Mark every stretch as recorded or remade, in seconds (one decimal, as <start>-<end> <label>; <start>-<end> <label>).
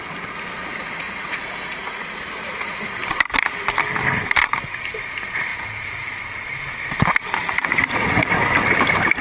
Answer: 0.0-0.8 recorded; 0.8-2.9 remade; 2.9-5.5 recorded; 5.5-6.2 remade; 6.2-7.4 recorded; 7.4-8.3 remade; 8.3-9.2 recorded